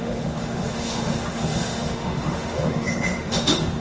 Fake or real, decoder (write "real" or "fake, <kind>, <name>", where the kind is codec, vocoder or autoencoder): fake, autoencoder, DAC-VAE